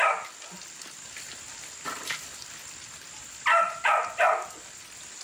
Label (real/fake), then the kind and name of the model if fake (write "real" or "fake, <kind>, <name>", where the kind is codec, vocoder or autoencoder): real